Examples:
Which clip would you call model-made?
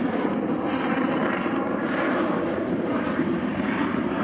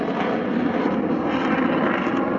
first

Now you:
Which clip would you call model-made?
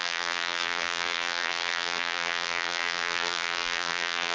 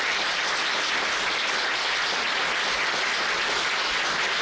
first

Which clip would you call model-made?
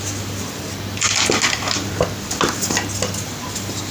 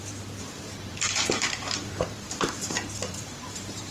second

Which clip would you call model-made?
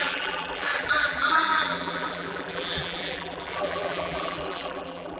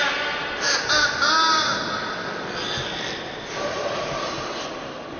first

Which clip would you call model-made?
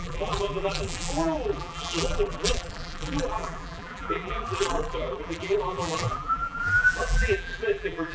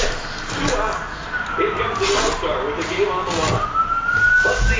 first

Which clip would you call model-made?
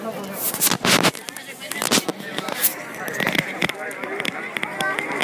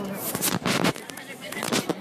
second